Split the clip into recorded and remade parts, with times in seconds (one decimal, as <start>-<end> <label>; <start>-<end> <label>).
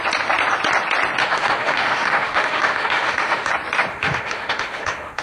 0.0-1.2 recorded; 1.2-3.5 remade; 3.5-3.9 recorded; 3.9-5.2 remade